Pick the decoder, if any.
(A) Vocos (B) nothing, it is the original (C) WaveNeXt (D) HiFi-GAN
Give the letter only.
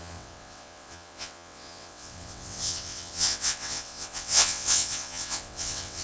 C